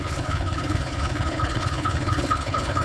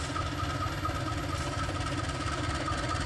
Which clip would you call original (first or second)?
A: second